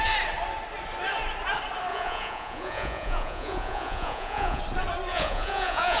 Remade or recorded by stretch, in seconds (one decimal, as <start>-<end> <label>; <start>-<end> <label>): 0.0-1.9 recorded; 1.9-4.6 remade; 4.6-5.1 recorded; 5.1-6.0 remade